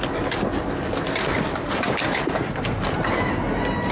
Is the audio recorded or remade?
recorded